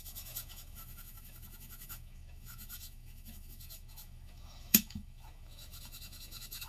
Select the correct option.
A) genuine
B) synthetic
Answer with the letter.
B